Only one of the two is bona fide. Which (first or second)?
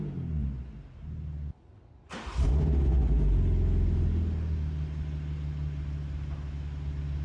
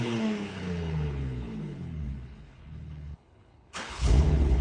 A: first